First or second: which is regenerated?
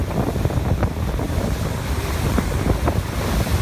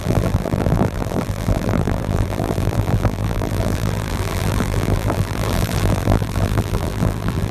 second